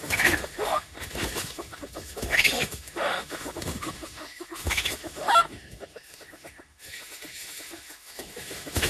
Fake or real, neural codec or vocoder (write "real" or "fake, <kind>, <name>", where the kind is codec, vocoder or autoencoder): fake, autoencoder, DAC-VAE